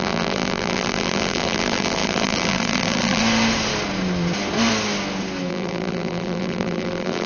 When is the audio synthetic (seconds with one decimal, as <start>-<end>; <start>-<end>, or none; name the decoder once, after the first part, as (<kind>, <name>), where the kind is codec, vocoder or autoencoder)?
0.0-3.2 (vocoder, BigVGAN v2); 5.5-7.3